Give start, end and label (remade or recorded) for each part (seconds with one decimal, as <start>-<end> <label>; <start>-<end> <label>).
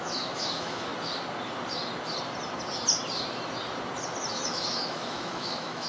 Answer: 0.0-0.9 remade; 0.9-4.3 recorded; 4.3-5.9 remade